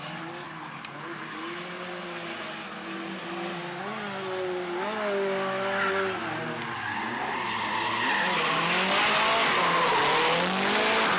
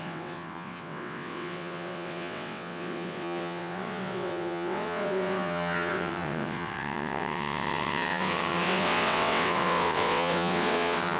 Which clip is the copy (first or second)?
second